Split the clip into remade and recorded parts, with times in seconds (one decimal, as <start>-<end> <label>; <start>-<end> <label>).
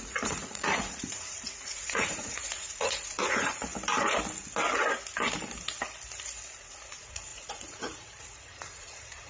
0.0-3.7 remade; 3.7-6.5 recorded; 6.5-9.3 remade